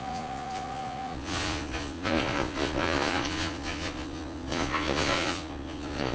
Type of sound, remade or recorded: remade